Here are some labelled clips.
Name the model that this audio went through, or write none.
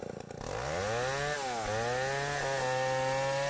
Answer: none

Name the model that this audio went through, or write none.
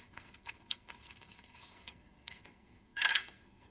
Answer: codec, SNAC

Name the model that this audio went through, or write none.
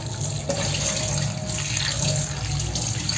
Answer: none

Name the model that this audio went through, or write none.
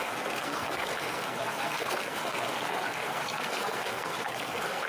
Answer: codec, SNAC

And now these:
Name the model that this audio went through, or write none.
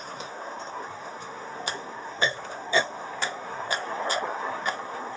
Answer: codec, SNAC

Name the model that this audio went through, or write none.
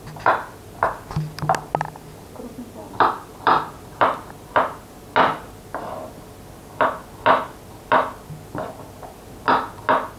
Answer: none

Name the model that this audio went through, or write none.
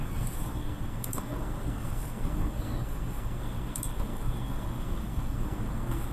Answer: codec, SNAC